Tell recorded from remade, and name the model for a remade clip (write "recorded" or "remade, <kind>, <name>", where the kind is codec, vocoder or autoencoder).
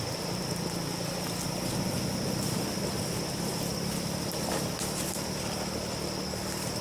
recorded